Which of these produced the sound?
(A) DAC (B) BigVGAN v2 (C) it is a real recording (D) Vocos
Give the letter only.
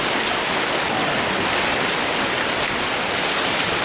C